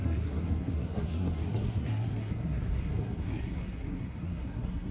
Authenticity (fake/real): fake